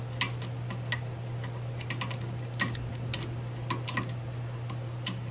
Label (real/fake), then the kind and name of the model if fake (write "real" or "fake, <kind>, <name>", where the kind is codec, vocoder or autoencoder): real